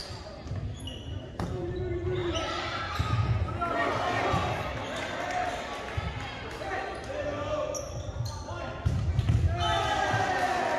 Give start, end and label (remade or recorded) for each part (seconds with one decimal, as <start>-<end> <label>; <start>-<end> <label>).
0.0-10.8 recorded